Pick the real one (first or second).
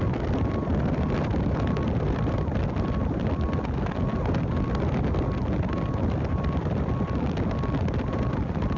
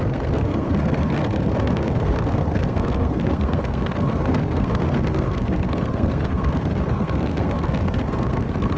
first